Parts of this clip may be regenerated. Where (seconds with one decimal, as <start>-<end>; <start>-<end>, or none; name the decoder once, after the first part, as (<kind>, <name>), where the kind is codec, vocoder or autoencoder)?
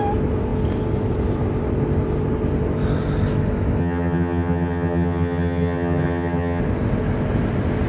3.8-6.6 (vocoder, HiFi-GAN)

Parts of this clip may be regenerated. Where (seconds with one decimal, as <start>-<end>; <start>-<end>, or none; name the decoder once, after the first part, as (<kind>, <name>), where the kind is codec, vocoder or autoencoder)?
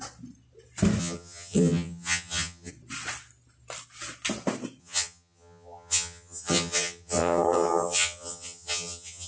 1.0-2.7 (vocoder, HiFi-GAN); 4.8-9.3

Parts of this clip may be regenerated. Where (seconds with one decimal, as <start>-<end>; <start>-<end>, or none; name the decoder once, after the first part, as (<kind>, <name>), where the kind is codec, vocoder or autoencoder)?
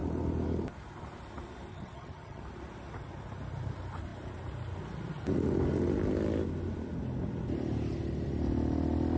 1.7-2.4 (vocoder, HiFi-GAN)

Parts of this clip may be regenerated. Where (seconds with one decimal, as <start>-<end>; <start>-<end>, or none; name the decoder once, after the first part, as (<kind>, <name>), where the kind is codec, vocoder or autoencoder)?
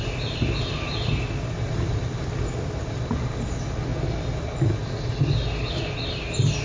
none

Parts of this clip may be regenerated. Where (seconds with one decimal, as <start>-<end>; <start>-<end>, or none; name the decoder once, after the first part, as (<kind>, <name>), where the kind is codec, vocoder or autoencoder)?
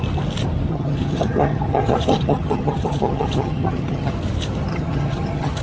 0.7-4.1 (vocoder, HiFi-GAN); 4.7-5.6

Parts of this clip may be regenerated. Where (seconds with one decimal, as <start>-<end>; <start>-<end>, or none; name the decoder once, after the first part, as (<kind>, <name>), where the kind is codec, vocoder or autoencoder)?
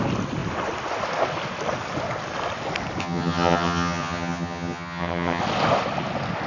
3.0-5.4 (vocoder, HiFi-GAN)